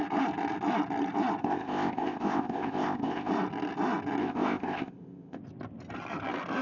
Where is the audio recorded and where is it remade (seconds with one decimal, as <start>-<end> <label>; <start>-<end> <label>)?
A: 0.0-1.4 recorded; 1.4-3.3 remade; 3.3-4.2 recorded; 4.2-5.4 remade; 5.4-6.6 recorded